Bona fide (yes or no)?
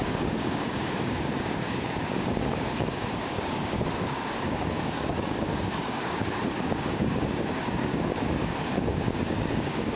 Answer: no